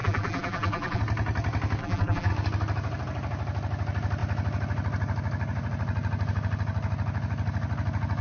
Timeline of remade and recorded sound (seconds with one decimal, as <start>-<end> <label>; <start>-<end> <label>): 0.0-1.0 remade; 1.0-1.8 recorded; 1.8-2.3 remade; 2.3-8.2 recorded